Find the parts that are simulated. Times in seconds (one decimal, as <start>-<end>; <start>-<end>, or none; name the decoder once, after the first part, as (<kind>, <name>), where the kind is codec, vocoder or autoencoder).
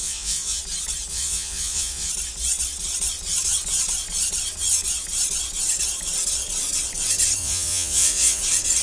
0.0-0.6 (vocoder, Vocos); 1.1-2.1; 7.4-8.4